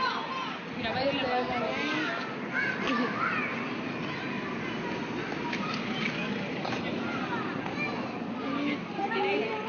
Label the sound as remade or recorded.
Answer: recorded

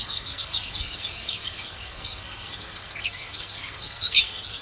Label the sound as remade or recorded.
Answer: remade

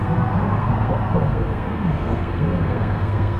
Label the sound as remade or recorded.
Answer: remade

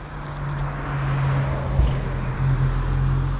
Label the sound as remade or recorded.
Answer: recorded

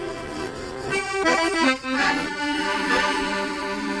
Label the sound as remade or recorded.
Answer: remade